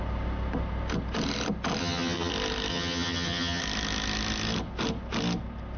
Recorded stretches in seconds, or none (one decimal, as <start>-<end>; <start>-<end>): 0.0-1.8; 2.3-2.7; 3.6-5.8